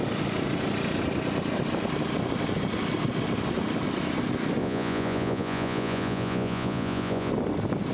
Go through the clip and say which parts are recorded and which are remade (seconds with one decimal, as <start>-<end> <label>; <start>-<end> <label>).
0.0-4.6 recorded; 4.6-7.3 remade; 7.3-7.9 recorded